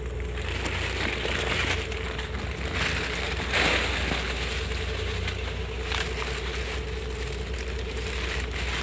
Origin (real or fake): real